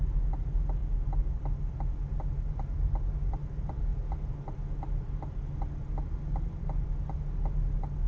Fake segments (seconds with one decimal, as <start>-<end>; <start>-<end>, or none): none